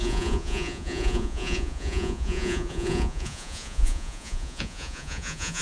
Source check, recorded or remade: remade